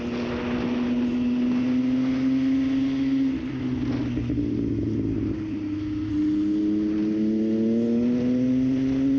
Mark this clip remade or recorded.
recorded